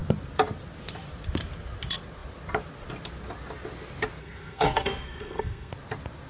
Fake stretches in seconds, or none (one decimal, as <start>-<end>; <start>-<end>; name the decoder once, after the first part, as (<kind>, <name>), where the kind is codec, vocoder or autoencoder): 4.2-5.7 (codec, SNAC)